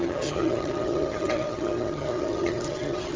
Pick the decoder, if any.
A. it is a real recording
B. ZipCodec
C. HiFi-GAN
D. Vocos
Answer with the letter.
C